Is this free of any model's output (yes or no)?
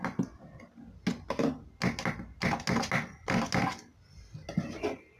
yes